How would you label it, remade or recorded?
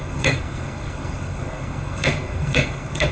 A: remade